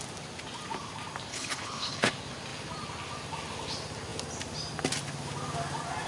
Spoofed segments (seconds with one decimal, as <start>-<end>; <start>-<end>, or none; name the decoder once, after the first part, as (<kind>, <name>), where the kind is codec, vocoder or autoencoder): 1.3-2.1 (codec, HILCodec)